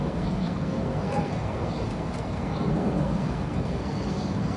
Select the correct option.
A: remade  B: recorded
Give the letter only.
A